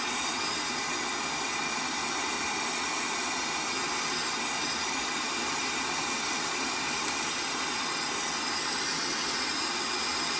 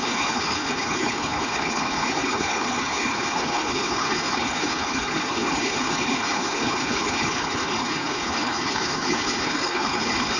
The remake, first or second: second